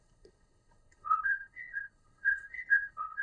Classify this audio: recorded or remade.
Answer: remade